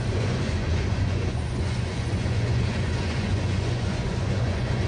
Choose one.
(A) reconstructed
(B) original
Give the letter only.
A